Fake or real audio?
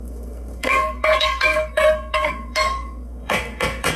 fake